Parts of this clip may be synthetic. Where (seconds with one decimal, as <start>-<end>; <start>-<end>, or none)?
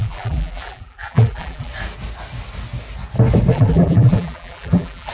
0.0-1.7; 3.5-5.1